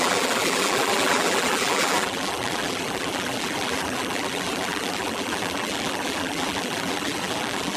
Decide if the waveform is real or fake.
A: fake